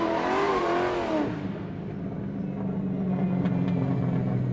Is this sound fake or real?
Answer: real